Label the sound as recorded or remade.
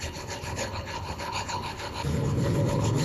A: remade